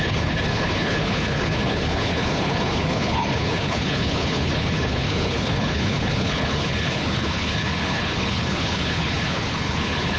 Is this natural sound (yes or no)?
no